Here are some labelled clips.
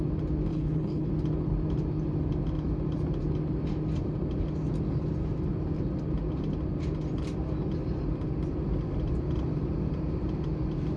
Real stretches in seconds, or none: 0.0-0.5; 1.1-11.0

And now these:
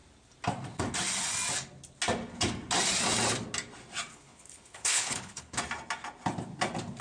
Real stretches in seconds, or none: 0.0-4.1; 5.6-7.0

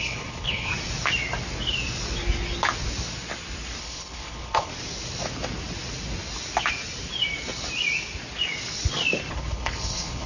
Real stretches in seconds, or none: 0.7-3.8; 4.7-9.3

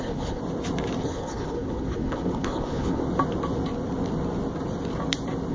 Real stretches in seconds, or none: 0.4-1.0; 3.0-5.5

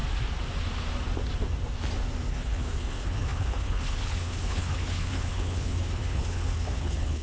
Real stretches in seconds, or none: 0.0-2.3

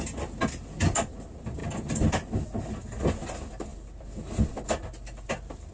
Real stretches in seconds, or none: 0.0-5.7